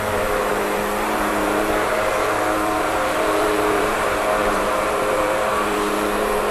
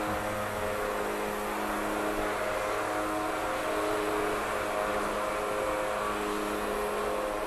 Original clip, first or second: second